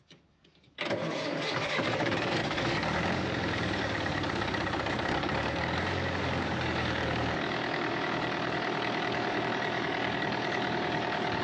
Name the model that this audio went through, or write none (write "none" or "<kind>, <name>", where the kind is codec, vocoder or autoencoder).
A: codec, DAC